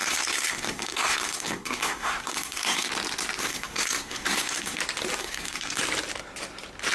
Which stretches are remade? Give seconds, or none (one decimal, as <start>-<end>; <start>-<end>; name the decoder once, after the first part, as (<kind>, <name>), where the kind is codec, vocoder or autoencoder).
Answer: 0.0-2.9 (codec, SNAC); 3.4-4.8; 5.2-5.8

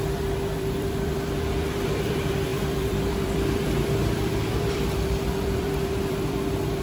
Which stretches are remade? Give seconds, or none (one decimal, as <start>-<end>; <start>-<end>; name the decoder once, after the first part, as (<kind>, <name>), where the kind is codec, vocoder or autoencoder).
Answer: 0.0-6.8 (vocoder, BigVGAN v2)